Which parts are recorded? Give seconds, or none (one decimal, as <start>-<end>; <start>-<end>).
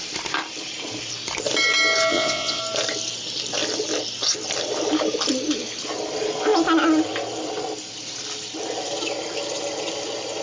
0.0-2.1; 2.6-10.4